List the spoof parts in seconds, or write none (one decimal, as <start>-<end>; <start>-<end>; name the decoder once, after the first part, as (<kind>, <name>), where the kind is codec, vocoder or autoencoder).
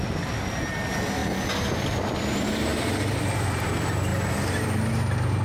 none